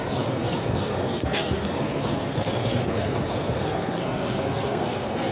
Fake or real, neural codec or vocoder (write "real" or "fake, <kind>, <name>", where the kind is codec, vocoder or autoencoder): fake, codec, SNAC